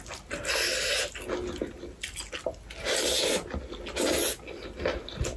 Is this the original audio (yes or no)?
yes